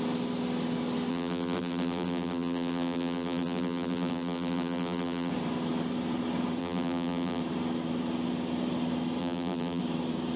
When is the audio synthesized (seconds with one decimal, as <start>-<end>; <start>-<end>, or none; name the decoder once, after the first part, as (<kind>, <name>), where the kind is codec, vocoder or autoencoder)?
1.1-5.3 (vocoder, BigVGAN v2); 6.6-7.4; 9.2-9.8